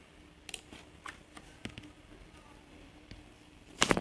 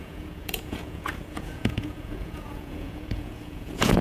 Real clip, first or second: first